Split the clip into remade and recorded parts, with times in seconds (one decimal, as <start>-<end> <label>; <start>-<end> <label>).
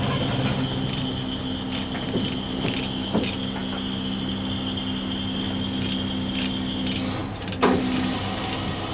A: 0.0-8.9 recorded